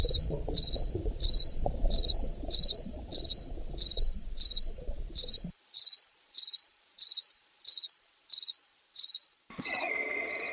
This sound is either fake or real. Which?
fake